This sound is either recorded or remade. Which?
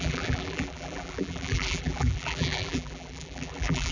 remade